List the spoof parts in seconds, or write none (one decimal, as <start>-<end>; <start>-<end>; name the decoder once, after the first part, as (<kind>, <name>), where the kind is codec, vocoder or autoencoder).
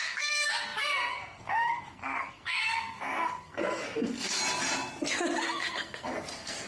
0.0-4.4 (codec, SNAC); 5.4-6.7